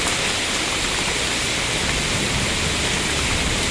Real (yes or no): yes